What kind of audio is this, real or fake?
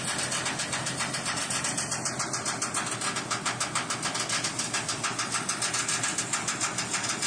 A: real